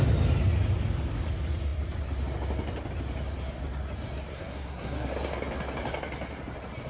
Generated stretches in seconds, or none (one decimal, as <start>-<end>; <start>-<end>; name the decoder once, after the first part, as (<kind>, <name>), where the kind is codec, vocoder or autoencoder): 4.3-5.1 (codec, SNAC)